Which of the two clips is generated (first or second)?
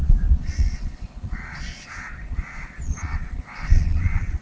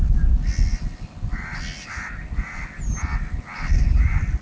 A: first